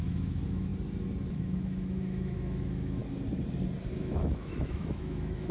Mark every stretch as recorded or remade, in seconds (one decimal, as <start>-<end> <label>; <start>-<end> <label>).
0.0-0.7 remade; 0.7-1.3 recorded; 1.3-3.0 remade; 3.0-3.9 recorded; 3.9-5.5 remade